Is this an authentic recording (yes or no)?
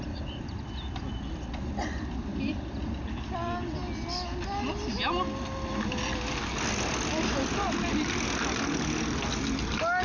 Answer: yes